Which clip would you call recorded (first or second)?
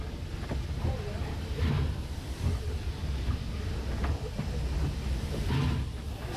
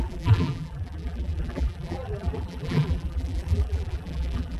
first